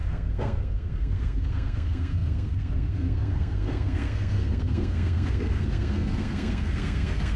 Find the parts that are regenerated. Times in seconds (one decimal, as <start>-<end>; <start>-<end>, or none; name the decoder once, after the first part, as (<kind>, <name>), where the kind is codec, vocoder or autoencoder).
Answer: 0.0-7.4 (codec, SNAC)